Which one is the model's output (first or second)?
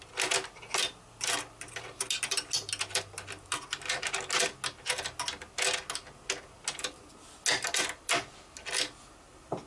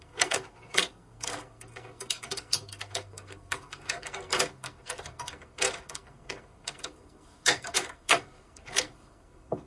second